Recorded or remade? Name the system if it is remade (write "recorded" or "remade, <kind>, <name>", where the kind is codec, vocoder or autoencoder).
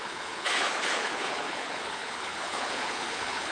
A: remade, codec, HILCodec